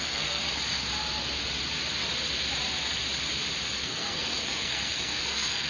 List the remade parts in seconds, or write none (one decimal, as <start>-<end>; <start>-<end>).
0.0-0.4; 3.8-5.7